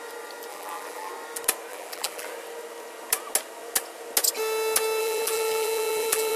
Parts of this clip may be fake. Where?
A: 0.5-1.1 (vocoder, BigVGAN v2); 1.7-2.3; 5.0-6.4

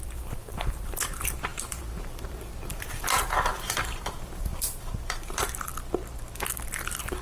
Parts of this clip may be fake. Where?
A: 0.0-5.7 (vocoder, BigVGAN v2); 6.7-7.2